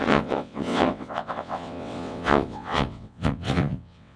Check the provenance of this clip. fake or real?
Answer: fake